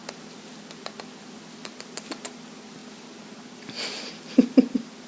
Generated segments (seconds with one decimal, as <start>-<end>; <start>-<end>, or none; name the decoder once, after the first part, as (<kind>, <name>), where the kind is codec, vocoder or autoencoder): none